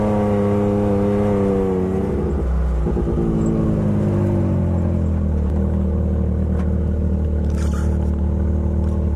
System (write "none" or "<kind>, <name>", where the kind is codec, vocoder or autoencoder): none